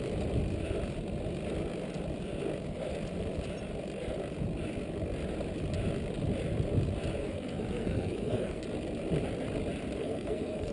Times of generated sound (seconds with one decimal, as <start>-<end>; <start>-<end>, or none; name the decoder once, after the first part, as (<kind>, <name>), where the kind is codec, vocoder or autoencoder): 7.2-8.6 (codec, SNAC); 10.0-10.7